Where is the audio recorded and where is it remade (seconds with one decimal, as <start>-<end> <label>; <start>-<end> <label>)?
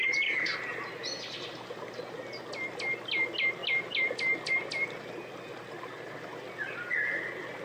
0.0-7.6 recorded